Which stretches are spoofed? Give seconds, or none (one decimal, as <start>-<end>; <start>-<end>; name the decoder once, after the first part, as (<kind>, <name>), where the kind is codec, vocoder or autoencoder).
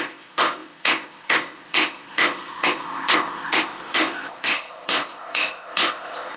0.0-6.4 (codec, ZipCodec)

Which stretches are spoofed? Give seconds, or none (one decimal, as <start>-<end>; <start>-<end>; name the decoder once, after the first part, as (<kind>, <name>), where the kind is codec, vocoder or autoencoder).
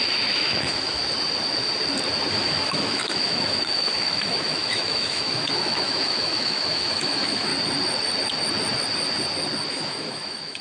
0.0-1.0 (autoencoder, DAC-VAE); 2.3-7.5; 9.7-10.6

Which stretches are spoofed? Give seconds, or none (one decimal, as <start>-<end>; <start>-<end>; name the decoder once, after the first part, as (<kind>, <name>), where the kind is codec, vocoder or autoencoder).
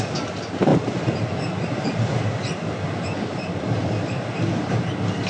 none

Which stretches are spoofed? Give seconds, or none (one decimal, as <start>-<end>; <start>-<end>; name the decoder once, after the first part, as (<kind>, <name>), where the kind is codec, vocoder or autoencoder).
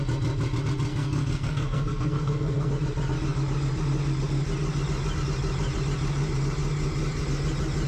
0.9-2.7 (codec, SNAC)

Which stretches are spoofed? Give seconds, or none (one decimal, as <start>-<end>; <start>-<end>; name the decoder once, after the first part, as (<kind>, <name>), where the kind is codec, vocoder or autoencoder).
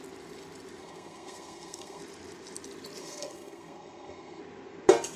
0.8-2.0 (codec, SNAC); 3.0-4.4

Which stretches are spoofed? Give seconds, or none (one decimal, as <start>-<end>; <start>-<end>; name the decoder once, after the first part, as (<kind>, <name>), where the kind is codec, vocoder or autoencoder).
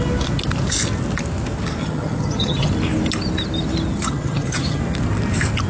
1.8-2.7 (vocoder, HiFi-GAN); 3.9-4.8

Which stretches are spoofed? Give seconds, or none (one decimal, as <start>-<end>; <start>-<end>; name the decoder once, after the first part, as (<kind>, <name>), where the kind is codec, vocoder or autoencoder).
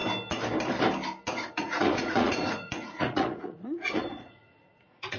1.5-5.2 (vocoder, Vocos)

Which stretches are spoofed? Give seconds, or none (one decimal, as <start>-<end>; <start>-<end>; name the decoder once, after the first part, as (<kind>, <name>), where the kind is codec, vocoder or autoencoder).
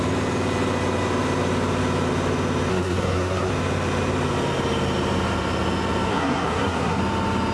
2.7-3.5 (codec, SNAC); 6.1-7.0